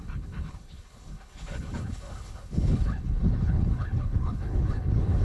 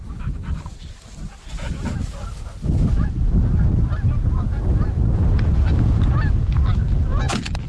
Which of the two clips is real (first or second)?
second